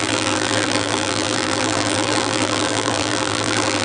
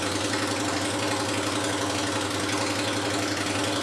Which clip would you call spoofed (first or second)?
first